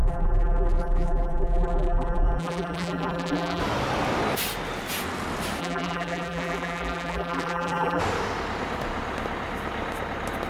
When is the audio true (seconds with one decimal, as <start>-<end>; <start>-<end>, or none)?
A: 3.6-5.6; 8.0-10.5